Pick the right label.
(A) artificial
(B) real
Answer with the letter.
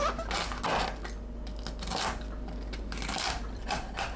B